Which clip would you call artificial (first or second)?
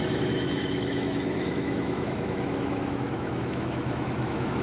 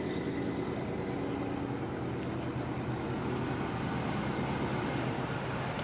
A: first